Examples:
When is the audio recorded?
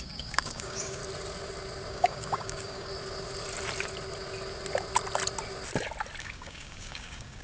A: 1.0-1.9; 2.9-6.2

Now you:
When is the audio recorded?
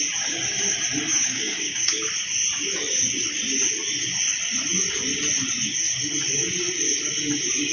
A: 0.0-1.1; 2.1-7.7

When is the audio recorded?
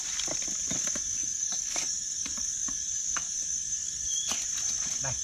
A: 0.0-1.2; 4.3-5.2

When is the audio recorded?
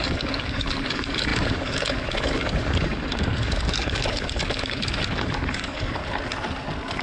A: 6.0-7.0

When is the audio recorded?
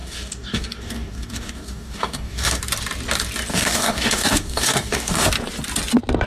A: 2.6-3.5; 5.3-6.3